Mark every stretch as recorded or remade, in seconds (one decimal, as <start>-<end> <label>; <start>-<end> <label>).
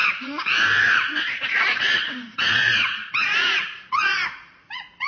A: 0.0-5.1 remade